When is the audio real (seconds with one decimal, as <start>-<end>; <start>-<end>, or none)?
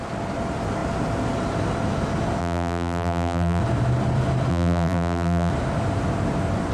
0.0-2.4; 3.6-4.5; 5.5-6.7